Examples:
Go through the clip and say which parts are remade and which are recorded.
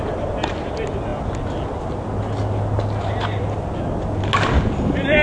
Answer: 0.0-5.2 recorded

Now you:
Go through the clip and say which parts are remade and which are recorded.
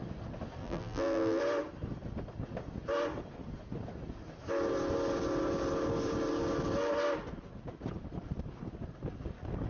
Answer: 0.0-0.6 recorded; 0.6-1.4 remade; 1.4-9.7 recorded